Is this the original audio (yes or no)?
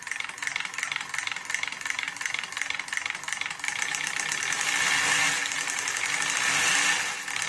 yes